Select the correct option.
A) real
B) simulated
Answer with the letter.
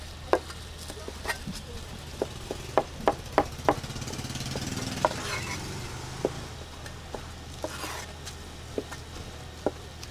A